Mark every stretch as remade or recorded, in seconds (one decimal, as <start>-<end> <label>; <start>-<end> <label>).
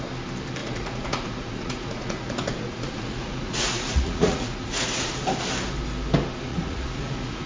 0.0-0.6 recorded; 0.6-5.1 remade; 5.1-6.5 recorded; 6.5-7.5 remade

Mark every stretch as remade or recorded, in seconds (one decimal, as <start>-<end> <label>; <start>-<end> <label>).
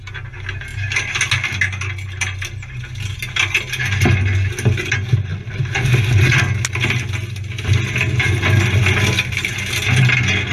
0.0-10.5 recorded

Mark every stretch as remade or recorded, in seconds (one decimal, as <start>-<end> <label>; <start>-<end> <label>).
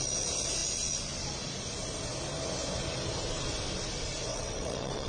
0.0-4.3 recorded; 4.3-5.1 remade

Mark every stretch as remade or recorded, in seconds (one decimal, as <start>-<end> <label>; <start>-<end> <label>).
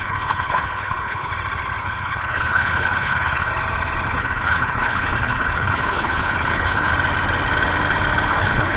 0.0-1.3 remade; 1.3-1.8 recorded; 1.8-3.5 remade; 3.5-4.2 recorded; 4.2-6.9 remade; 6.9-8.3 recorded; 8.3-8.8 remade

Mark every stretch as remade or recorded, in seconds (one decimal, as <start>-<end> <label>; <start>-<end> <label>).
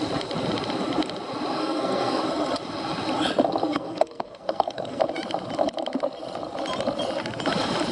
0.0-1.6 recorded; 1.6-2.2 remade; 2.2-3.6 recorded; 3.6-5.0 remade; 5.0-7.9 recorded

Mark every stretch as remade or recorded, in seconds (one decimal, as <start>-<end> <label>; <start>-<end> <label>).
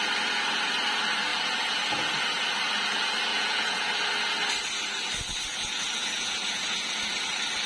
0.0-3.3 recorded; 3.3-3.9 remade; 3.9-5.5 recorded; 5.5-6.9 remade; 6.9-7.7 recorded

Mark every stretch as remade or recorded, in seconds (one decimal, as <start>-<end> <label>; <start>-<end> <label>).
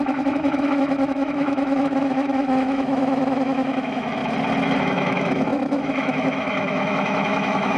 0.0-4.2 remade; 4.2-4.8 recorded; 4.8-7.8 remade